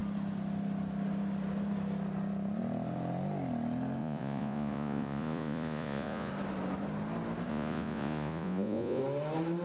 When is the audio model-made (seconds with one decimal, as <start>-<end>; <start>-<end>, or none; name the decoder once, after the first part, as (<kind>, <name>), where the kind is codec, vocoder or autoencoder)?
4.0-6.3 (vocoder, Vocos); 7.5-9.0